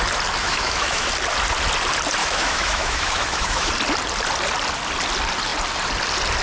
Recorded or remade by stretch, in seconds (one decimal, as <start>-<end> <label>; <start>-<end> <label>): 0.0-0.4 recorded; 0.4-1.1 remade; 1.1-2.2 recorded; 2.2-3.7 remade; 3.7-6.4 recorded